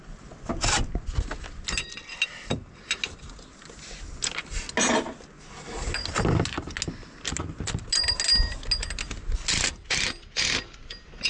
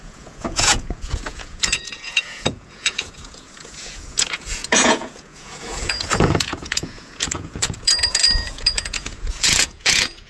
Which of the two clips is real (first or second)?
first